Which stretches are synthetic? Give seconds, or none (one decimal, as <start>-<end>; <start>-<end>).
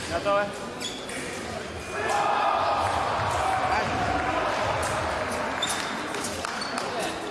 none